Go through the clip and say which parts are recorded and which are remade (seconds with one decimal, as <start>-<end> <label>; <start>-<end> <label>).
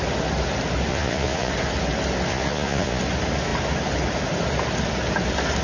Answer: 0.0-0.9 recorded; 0.9-1.5 remade; 1.5-2.3 recorded; 2.3-3.0 remade; 3.0-5.6 recorded